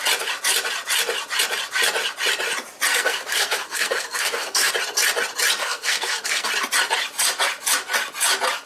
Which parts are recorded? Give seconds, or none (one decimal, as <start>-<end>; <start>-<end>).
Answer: 0.0-2.9; 4.7-5.6; 6.5-8.7